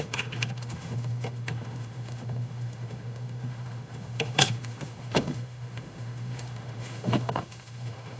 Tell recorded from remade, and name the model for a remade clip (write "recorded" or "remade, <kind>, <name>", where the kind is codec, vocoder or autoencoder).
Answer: remade, autoencoder, DAC-VAE